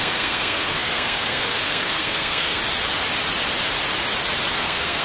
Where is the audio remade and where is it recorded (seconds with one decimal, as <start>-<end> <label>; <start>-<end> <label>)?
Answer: 0.0-2.6 remade; 2.6-4.5 recorded; 4.5-5.0 remade